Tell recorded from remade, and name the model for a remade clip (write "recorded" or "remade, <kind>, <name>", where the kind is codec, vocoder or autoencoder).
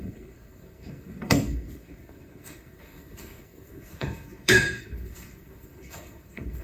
remade, codec, SNAC